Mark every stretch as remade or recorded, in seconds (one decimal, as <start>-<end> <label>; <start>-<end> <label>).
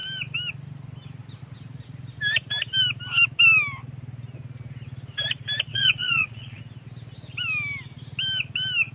0.0-5.7 recorded; 5.7-6.6 remade; 6.6-8.9 recorded